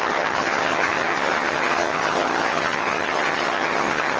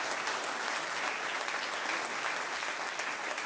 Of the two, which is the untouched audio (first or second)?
second